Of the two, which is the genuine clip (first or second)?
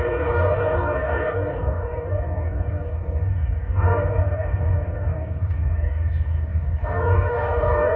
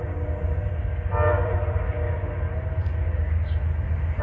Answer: second